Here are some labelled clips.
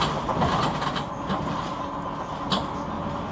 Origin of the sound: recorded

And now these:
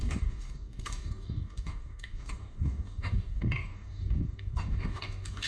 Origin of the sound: remade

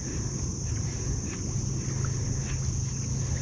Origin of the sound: recorded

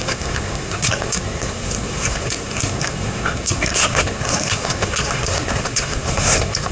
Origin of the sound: remade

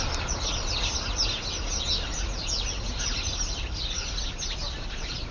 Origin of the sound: recorded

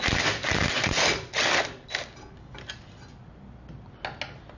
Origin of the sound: recorded